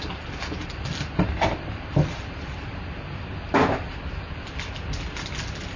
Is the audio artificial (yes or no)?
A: no